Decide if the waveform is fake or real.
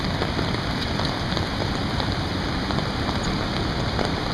real